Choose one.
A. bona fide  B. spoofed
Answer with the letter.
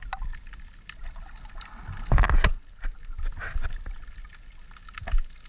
A